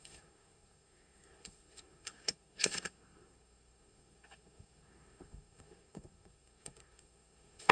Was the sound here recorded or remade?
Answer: remade